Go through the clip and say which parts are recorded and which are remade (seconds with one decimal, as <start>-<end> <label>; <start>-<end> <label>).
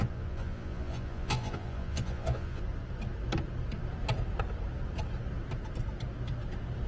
0.0-2.6 remade; 2.6-6.9 recorded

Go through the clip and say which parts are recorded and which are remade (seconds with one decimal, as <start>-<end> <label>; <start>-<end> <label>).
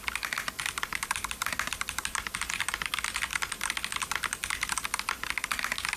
0.0-0.9 recorded; 0.9-2.9 remade; 2.9-6.0 recorded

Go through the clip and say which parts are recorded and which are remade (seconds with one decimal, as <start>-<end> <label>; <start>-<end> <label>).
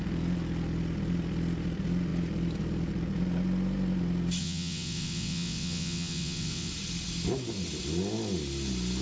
0.0-4.4 recorded; 4.4-6.7 remade; 6.7-9.0 recorded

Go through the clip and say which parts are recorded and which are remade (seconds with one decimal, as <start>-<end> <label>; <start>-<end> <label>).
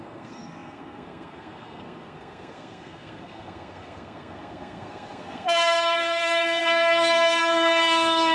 0.0-8.3 remade